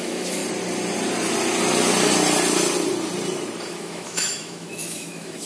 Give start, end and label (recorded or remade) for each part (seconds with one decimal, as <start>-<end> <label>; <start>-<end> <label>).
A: 0.0-0.4 remade; 0.4-3.7 recorded; 3.7-5.5 remade